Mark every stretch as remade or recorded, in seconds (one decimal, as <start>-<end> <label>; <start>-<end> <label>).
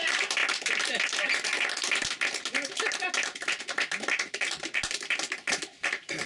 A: 0.0-0.4 remade; 0.4-4.2 recorded; 4.2-6.3 remade